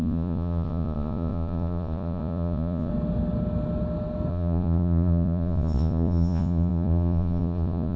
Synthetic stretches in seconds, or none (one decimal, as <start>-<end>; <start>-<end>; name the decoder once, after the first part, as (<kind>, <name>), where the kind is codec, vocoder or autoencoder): 0.0-2.9 (vocoder, Vocos); 4.3-8.0